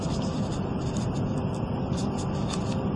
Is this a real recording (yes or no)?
yes